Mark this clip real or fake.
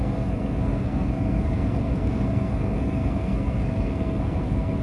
fake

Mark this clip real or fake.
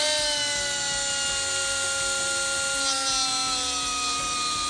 real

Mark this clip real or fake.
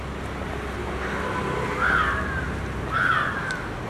real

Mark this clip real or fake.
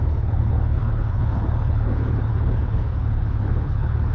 fake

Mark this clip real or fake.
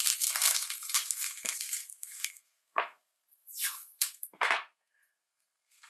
fake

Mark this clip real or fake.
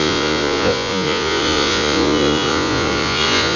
fake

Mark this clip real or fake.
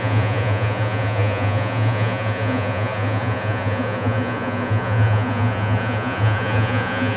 fake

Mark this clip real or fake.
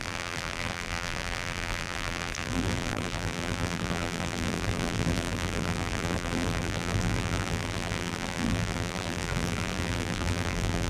fake